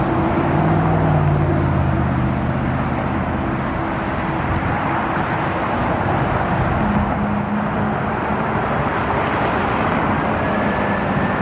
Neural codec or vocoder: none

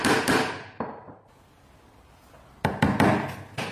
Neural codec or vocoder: none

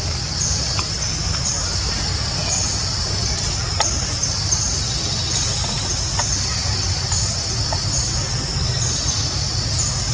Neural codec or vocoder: none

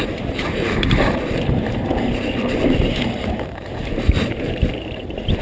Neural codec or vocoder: vocoder, BigVGAN v2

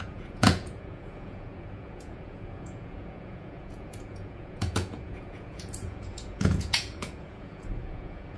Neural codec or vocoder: vocoder, Vocos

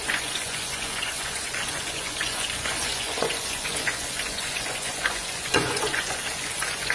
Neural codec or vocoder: vocoder, Vocos